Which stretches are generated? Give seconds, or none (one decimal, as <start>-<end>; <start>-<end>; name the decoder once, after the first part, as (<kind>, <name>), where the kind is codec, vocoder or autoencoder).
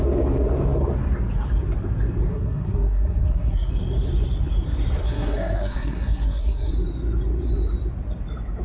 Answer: 2.3-3.7 (codec, SNAC); 5.0-6.7